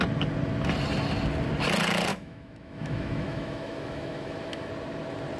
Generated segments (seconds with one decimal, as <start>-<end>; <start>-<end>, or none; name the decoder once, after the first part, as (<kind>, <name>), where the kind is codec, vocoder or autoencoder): 2.1-4.7 (autoencoder, DAC-VAE)